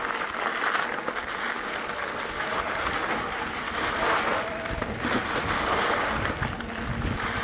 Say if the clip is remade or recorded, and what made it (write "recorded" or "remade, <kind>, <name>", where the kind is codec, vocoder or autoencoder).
recorded